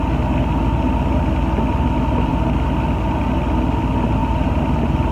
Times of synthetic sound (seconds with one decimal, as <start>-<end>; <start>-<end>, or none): 4.2-5.1